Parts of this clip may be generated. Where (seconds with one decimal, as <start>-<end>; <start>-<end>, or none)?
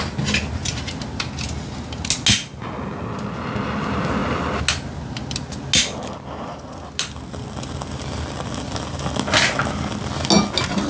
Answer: none